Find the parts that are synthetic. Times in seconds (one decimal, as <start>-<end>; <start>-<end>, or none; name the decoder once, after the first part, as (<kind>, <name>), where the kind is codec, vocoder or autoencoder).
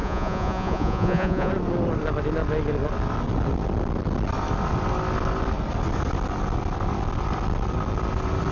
0.0-1.5 (vocoder, Vocos)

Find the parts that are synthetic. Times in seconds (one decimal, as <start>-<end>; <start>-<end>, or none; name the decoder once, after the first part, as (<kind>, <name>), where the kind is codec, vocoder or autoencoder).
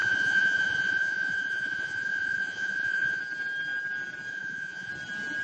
0.0-3.2 (vocoder, Vocos); 4.3-4.9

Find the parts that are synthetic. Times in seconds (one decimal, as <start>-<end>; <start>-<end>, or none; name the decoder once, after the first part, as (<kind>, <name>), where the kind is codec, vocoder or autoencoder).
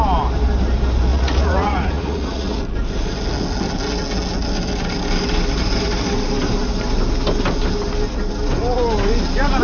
1.1-2.6 (vocoder, Vocos)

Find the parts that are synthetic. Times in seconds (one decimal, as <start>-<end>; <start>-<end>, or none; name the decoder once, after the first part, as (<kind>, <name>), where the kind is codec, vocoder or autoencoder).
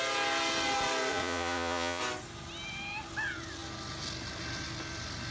1.1-2.0 (vocoder, Vocos)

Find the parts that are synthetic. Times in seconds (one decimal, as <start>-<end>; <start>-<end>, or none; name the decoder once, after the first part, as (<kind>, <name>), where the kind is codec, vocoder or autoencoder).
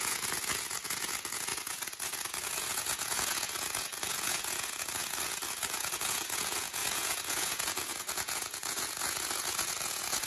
0.0-10.3 (vocoder, Vocos)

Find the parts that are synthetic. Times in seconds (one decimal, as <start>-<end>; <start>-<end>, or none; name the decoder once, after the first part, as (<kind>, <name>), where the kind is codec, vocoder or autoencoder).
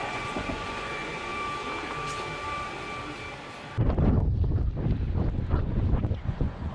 0.0-1.3 (vocoder, Vocos); 5.3-6.7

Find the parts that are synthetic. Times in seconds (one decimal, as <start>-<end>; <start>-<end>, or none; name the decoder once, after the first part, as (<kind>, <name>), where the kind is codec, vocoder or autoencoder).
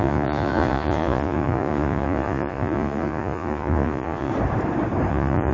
0.0-4.3 (vocoder, Vocos); 5.1-5.5